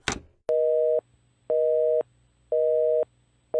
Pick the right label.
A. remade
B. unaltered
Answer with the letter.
B